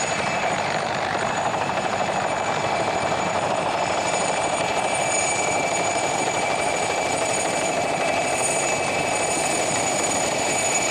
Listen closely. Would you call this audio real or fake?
fake